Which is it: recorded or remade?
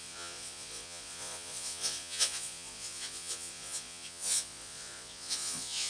remade